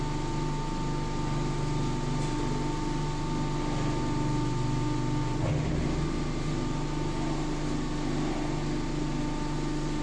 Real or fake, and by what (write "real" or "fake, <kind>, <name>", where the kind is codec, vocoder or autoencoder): real